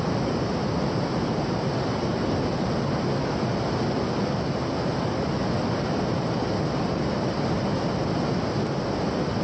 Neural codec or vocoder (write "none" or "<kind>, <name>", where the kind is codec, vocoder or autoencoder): none